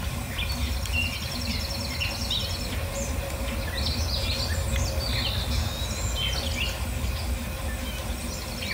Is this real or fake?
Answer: real